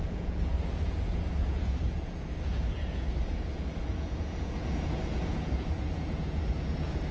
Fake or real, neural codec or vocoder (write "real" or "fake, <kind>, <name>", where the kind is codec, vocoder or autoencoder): fake, vocoder, Vocos